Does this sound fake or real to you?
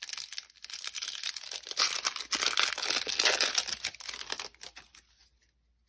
real